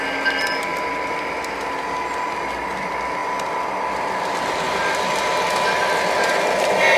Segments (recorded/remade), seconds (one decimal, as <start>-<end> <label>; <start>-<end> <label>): 0.0-7.0 recorded

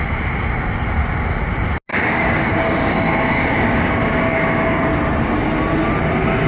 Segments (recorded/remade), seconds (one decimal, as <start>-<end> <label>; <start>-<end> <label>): 0.0-1.9 recorded; 1.9-4.9 remade; 4.9-6.5 recorded

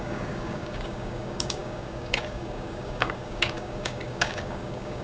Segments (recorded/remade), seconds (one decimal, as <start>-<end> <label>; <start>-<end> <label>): 0.0-5.0 remade